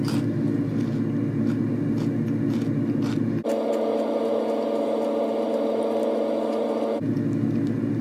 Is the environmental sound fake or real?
real